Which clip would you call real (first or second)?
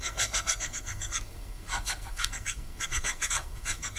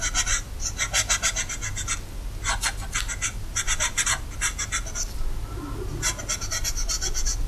second